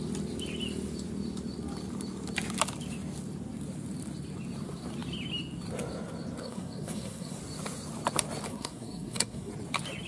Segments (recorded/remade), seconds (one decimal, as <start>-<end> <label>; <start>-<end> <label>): 0.0-6.4 recorded; 6.4-7.4 remade; 7.4-8.5 recorded; 8.5-9.5 remade; 9.5-10.1 recorded